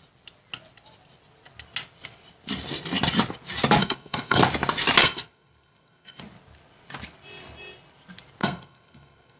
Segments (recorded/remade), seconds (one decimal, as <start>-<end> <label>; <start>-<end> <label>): 0.0-3.8 recorded; 3.8-4.4 remade; 4.4-5.0 recorded; 5.0-6.2 remade; 6.2-8.4 recorded; 8.4-9.4 remade